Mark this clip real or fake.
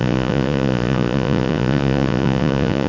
fake